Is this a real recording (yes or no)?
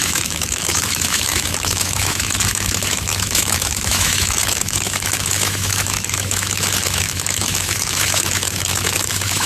no